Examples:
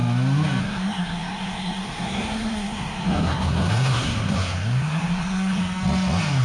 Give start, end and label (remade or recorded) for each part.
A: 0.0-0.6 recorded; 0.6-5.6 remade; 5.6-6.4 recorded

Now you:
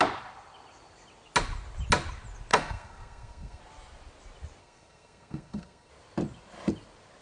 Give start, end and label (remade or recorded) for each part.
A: 0.0-2.5 recorded; 2.5-3.6 remade; 3.6-4.6 recorded; 4.6-5.9 remade; 5.9-7.2 recorded

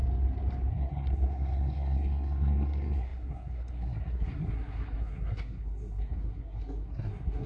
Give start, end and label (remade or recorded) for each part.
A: 0.0-0.7 recorded; 0.7-7.5 remade

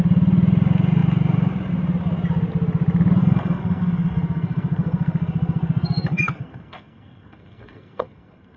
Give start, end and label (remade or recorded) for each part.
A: 0.0-3.2 recorded; 3.2-8.6 remade

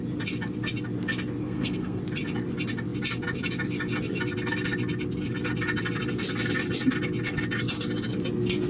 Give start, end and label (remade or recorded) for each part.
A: 0.0-1.4 recorded; 1.4-2.0 remade; 2.0-8.7 recorded